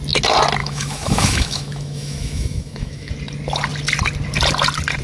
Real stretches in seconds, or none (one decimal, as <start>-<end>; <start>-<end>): 0.0-0.6; 3.1-5.0